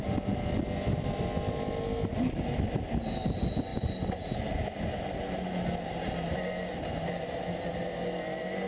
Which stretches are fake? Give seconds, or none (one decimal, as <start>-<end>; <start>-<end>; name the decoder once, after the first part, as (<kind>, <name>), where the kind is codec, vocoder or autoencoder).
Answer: none